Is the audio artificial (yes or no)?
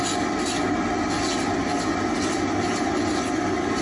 no